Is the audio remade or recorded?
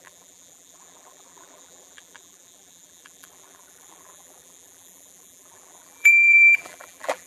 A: remade